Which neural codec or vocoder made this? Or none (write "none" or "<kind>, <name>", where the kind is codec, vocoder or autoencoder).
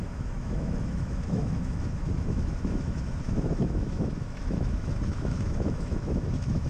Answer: autoencoder, DAC-VAE